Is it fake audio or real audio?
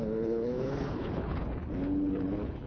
fake